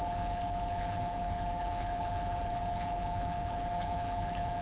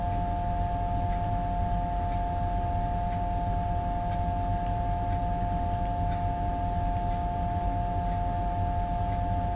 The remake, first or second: first